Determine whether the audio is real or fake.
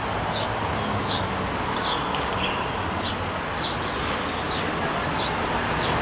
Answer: real